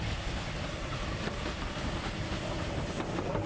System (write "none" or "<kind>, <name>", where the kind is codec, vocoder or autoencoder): none